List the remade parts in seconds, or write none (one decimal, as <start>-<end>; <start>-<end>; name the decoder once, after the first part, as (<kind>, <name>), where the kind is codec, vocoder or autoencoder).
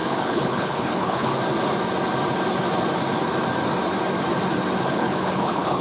0.0-1.3 (codec, HILCodec); 4.8-5.8